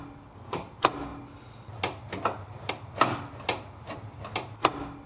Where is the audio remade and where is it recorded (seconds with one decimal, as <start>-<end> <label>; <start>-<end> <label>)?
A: 0.0-5.1 recorded